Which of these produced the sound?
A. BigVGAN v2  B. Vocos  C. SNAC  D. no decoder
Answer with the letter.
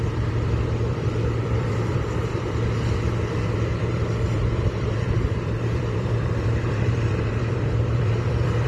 A